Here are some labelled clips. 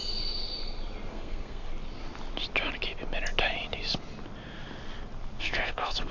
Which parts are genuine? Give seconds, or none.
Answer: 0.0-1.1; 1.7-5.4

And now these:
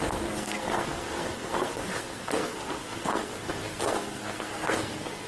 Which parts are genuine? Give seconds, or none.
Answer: none

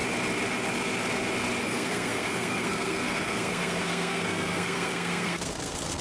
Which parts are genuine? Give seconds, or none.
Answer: 0.0-1.6

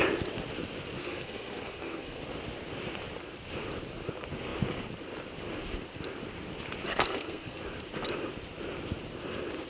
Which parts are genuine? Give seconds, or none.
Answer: 0.0-1.0; 2.2-6.9; 7.6-9.7

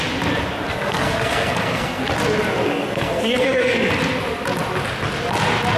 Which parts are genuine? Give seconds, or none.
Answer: 0.0-0.7; 2.0-2.5; 3.9-5.8

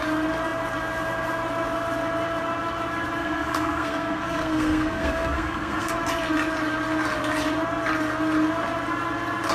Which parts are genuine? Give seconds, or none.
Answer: 0.0-3.2; 5.9-9.5

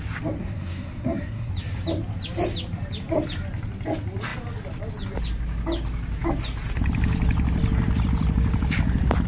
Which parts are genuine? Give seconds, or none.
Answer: 0.0-0.4; 1.5-9.3

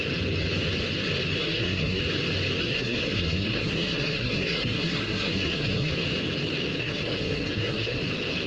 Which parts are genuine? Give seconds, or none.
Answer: 0.0-1.4; 2.0-2.6; 5.9-6.8; 8.0-8.5